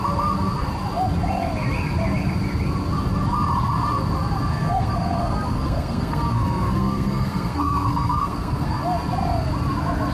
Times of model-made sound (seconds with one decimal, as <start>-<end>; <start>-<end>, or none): 4.5-8.8